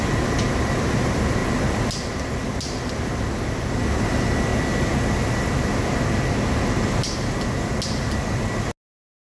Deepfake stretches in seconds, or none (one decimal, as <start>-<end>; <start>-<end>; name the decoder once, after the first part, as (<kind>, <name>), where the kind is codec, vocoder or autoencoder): none